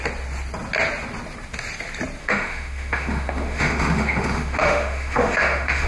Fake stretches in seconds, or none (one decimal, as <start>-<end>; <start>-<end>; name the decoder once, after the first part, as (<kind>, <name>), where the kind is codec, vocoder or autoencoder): 2.2-5.9 (autoencoder, DAC-VAE)